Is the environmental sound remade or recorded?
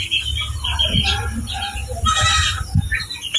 recorded